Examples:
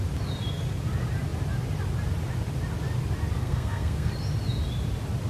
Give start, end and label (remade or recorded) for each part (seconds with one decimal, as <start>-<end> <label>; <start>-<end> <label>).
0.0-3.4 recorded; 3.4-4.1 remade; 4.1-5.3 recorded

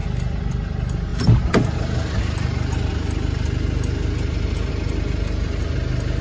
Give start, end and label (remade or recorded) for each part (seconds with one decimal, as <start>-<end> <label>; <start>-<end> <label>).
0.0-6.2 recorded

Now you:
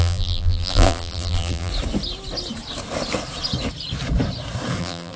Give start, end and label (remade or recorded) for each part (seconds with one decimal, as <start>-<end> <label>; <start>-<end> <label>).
0.0-1.7 remade; 1.7-4.8 recorded; 4.8-5.2 remade

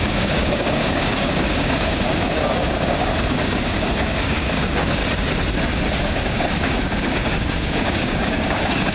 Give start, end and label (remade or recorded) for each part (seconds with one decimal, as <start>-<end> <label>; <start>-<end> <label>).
0.0-5.0 remade; 5.0-6.0 recorded; 6.0-8.9 remade

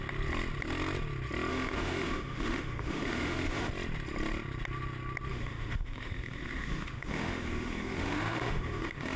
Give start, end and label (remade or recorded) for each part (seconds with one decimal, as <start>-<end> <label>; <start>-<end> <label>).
0.0-1.5 recorded; 1.5-3.7 remade; 3.7-5.3 recorded; 5.3-9.2 remade

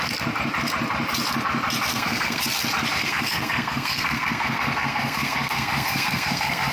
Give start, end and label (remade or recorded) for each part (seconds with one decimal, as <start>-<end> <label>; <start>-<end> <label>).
0.0-1.9 recorded; 1.9-2.4 remade; 2.4-3.0 recorded; 3.0-6.7 remade

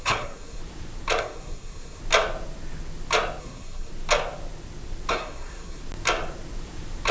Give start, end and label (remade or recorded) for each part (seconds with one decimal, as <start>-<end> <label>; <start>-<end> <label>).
0.0-0.6 remade; 0.6-1.2 recorded; 1.2-2.0 remade; 2.0-3.4 recorded; 3.4-3.9 remade; 3.9-5.1 recorded; 5.1-5.8 remade; 5.8-7.1 recorded

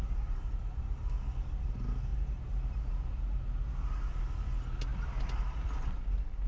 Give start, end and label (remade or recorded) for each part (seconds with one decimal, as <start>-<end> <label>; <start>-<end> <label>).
0.0-4.9 recorded; 4.9-6.0 remade; 6.0-6.5 recorded